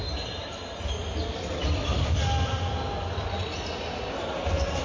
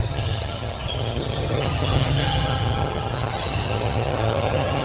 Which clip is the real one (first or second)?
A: first